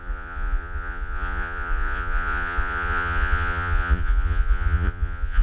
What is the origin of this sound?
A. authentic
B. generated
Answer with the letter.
B